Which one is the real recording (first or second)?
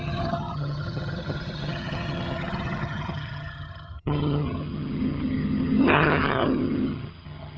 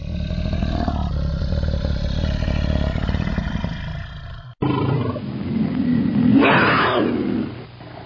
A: second